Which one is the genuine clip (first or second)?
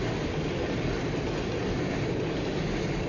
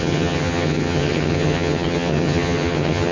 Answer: first